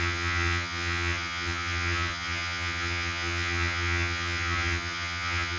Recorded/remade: remade